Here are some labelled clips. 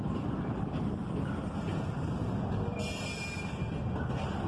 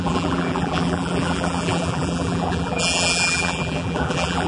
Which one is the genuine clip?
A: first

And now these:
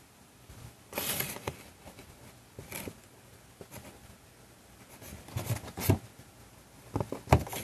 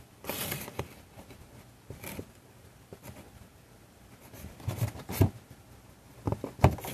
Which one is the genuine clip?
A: first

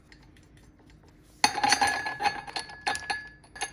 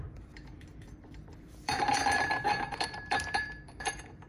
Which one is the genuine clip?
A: first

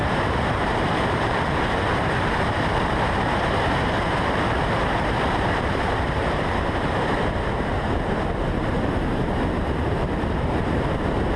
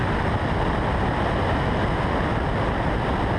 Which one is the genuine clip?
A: second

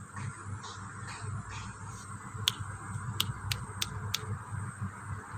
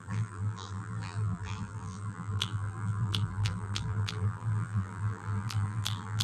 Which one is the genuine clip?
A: first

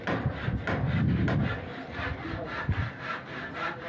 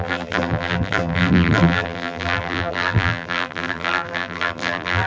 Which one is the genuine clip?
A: first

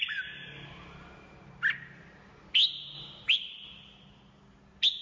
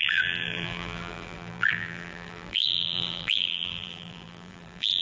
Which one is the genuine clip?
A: first